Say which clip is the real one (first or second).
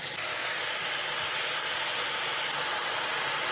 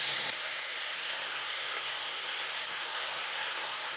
first